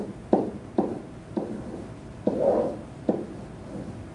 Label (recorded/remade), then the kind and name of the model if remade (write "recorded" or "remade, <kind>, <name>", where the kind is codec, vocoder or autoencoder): recorded